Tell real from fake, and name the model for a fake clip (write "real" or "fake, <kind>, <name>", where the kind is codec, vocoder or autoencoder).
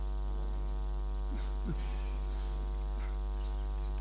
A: real